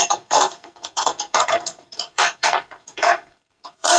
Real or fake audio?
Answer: fake